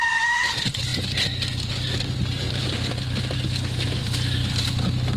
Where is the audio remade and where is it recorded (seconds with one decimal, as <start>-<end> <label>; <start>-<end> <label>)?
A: 0.0-5.2 remade